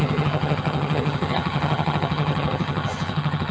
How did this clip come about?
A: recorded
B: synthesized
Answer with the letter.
B